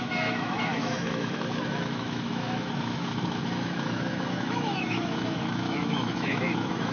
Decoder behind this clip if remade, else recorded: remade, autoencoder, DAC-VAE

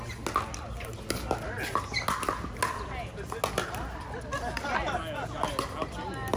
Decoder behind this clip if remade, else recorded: recorded